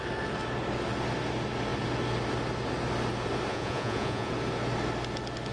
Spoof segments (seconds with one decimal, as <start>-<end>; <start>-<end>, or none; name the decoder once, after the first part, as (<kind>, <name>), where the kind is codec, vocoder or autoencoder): 3.5-4.3 (vocoder, Vocos)